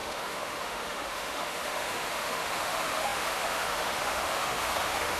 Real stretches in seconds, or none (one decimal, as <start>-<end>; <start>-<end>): none